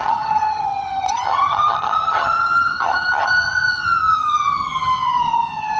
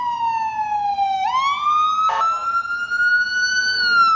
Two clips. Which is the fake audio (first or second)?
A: first